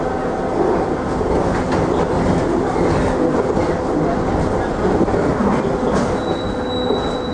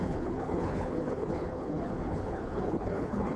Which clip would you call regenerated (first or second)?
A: second